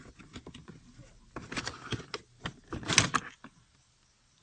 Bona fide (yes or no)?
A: yes